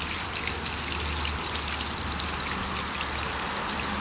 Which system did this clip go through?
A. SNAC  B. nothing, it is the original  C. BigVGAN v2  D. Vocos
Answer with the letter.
B